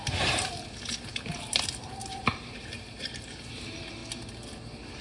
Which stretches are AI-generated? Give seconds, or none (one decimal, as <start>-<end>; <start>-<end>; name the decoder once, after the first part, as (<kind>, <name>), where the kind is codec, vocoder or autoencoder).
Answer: 0.0-4.0 (vocoder, BigVGAN v2)